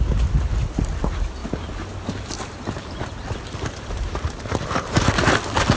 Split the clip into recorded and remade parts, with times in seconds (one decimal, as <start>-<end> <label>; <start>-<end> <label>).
0.0-5.8 recorded